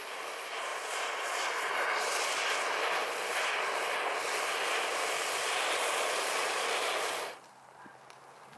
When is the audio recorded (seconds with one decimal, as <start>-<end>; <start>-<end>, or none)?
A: 0.0-8.6